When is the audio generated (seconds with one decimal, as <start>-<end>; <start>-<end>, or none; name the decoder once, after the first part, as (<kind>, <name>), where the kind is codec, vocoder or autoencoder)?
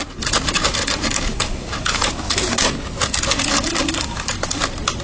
0.8-2.1 (codec, DAC); 3.5-4.6